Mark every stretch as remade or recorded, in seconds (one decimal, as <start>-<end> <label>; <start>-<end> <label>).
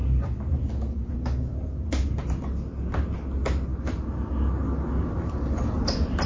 0.0-6.3 recorded